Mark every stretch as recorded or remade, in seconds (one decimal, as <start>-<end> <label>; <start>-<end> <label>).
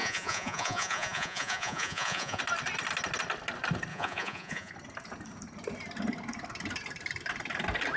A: 0.0-2.4 remade; 2.4-3.9 recorded; 3.9-4.7 remade; 4.7-8.0 recorded